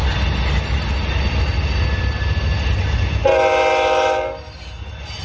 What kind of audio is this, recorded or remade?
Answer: recorded